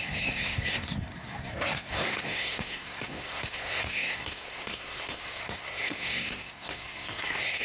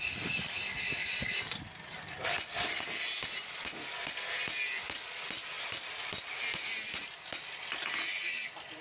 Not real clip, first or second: first